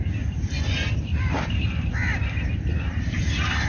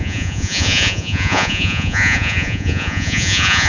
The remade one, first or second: second